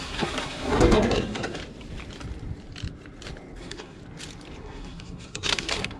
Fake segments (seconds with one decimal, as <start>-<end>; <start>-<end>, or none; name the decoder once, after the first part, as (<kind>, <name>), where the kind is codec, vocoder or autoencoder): 0.0-1.6 (codec, SNAC); 3.6-4.0; 4.6-6.0